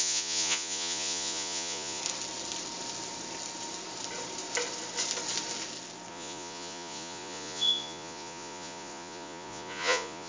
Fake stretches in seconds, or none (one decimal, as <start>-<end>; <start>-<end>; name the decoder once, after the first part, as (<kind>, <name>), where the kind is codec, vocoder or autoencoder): 0.0-2.0 (vocoder, Vocos); 6.1-10.3